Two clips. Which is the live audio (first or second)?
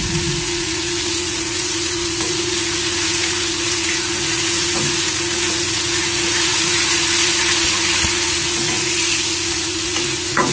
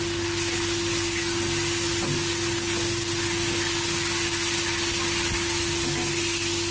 second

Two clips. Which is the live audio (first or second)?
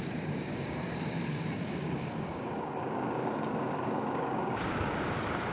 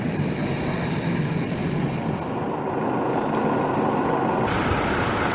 second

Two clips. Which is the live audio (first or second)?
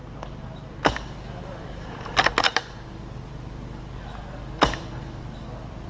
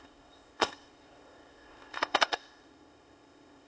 first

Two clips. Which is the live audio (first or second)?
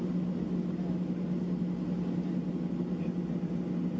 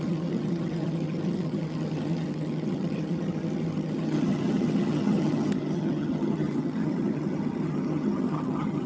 first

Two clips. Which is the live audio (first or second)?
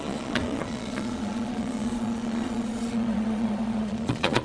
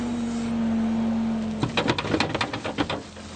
second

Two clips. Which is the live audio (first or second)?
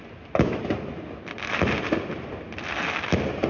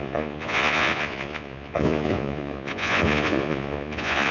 first